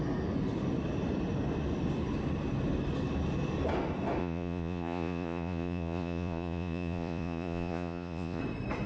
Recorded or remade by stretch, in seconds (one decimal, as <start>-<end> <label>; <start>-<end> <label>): 0.0-4.2 recorded; 4.2-8.4 remade; 8.4-8.9 recorded